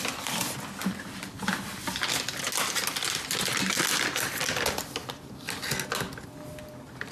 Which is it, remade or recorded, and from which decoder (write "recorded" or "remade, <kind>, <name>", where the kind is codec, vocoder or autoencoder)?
recorded